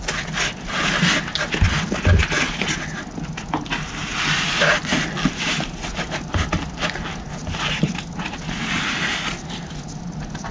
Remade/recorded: recorded